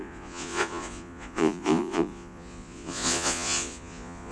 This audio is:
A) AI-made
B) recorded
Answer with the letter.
A